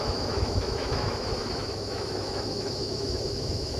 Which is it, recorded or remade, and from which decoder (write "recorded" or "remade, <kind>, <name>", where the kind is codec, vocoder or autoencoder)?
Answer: remade, autoencoder, DAC-VAE